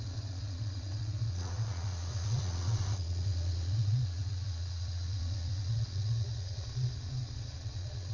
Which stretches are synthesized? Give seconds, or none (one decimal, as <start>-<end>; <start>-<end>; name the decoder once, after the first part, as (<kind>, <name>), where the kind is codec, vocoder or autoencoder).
0.0-8.1 (vocoder, Vocos)